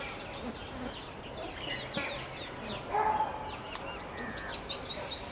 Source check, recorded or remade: recorded